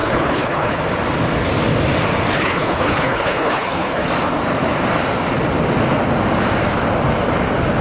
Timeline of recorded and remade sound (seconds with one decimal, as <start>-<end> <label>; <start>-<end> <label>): 0.0-0.8 remade; 0.8-2.3 recorded; 2.3-4.1 remade; 4.1-7.8 recorded